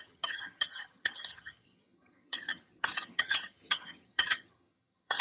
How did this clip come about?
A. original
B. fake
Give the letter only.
B